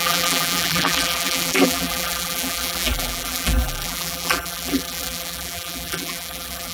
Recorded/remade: remade